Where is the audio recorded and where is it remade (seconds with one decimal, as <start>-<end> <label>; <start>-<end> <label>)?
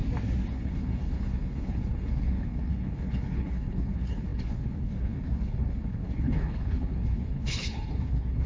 0.0-0.5 recorded; 0.5-8.5 remade